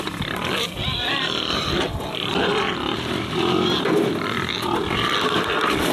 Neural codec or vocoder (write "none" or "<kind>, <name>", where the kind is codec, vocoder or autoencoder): none